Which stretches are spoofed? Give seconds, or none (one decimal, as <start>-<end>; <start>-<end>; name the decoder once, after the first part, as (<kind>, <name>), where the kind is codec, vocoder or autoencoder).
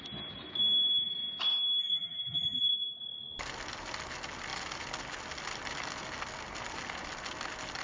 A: 1.8-2.7 (vocoder, BigVGAN v2)